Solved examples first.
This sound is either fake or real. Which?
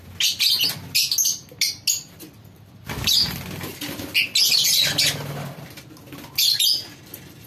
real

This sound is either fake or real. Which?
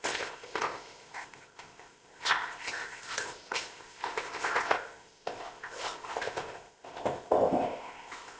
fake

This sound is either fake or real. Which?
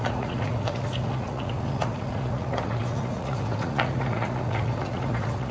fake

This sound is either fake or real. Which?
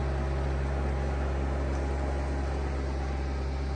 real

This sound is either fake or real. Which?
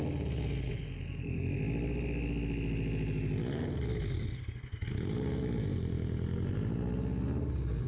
real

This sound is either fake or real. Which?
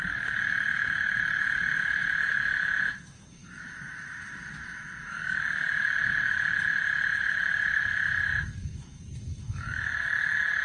fake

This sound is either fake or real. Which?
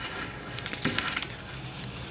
real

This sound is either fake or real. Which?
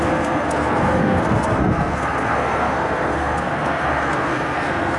fake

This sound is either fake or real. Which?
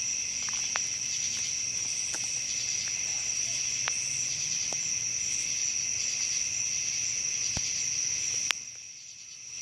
real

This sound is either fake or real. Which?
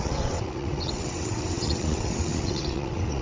fake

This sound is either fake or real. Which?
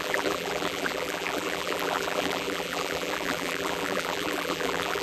fake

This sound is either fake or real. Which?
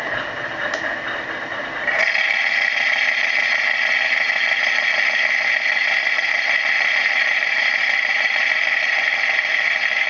real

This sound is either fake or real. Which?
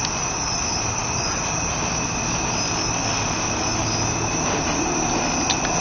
real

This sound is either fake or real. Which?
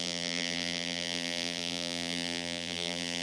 fake